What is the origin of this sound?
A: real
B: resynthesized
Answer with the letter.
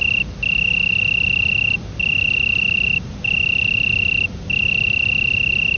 A